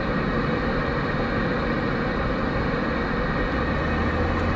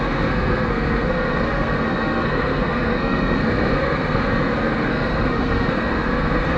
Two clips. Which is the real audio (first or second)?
first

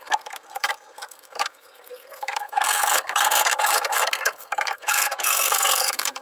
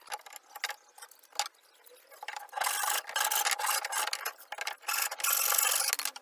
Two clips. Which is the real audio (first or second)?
second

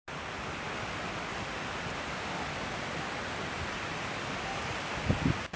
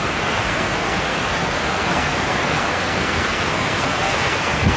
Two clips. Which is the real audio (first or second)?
first